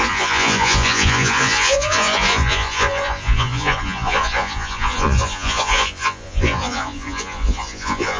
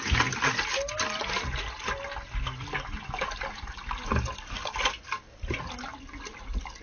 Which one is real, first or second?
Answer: second